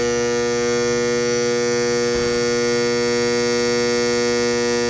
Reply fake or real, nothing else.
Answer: real